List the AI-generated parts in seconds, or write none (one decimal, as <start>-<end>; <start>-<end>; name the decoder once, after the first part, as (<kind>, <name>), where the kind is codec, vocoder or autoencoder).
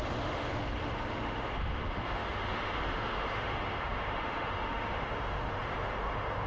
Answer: 0.0-6.5 (autoencoder, DAC-VAE)